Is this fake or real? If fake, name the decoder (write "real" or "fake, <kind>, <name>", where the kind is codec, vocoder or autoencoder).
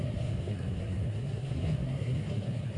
fake, codec, SNAC